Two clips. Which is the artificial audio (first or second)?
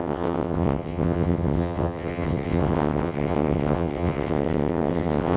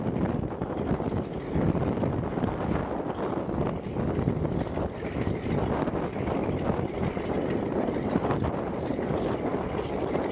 first